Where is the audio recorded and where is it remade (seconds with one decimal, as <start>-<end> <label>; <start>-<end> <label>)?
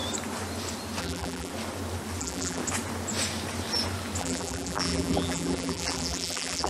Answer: 0.0-1.0 recorded; 1.0-1.5 remade; 1.5-2.2 recorded; 2.2-2.6 remade; 2.6-4.2 recorded; 4.2-6.7 remade